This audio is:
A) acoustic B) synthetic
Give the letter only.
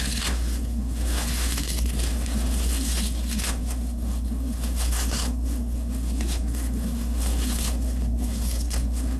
B